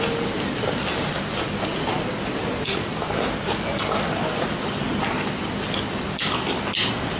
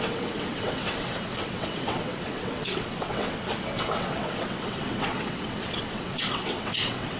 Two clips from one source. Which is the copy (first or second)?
second